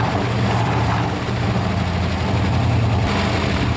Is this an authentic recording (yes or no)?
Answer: yes